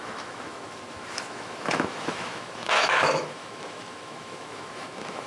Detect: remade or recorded remade